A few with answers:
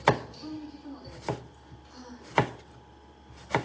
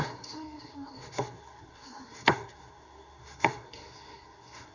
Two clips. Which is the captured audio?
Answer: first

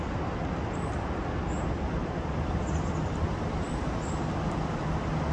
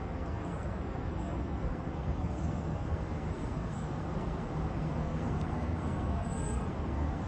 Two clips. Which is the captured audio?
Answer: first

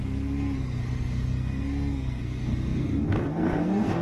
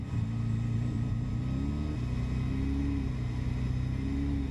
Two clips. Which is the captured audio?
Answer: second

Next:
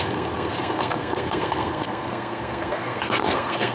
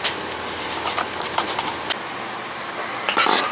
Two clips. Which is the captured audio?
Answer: second